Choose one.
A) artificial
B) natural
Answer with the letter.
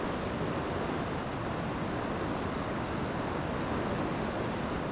B